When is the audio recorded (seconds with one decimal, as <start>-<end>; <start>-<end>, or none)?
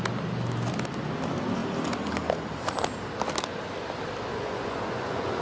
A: 0.0-4.3